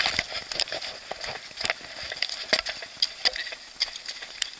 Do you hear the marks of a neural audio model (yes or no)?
no